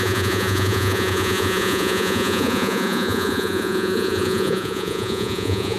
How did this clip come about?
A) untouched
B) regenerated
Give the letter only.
B